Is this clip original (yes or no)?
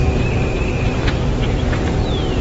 no